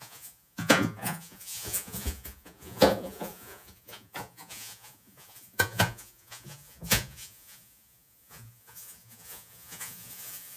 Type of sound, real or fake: fake